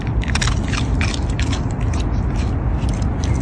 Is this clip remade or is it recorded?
recorded